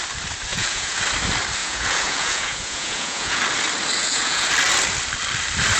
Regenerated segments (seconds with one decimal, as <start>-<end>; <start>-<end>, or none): 0.5-1.0; 1.6-3.4; 4.0-4.5